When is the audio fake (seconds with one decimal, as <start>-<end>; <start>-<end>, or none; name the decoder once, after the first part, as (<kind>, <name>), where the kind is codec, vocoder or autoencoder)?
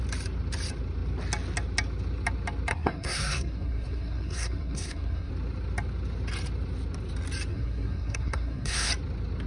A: 2.7-5.3 (codec, SNAC); 7.5-8.9